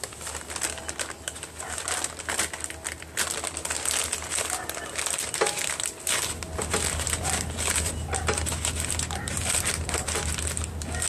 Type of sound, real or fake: real